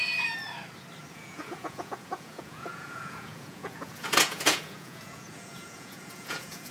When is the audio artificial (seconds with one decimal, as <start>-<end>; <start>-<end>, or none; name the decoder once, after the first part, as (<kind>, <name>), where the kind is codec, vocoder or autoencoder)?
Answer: 1.1-6.7 (vocoder, Vocos)